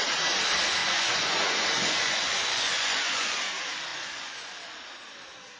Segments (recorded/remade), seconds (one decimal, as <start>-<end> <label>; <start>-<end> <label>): 0.0-0.8 recorded; 0.8-3.4 remade; 3.4-3.9 recorded; 3.9-4.5 remade; 4.5-5.6 recorded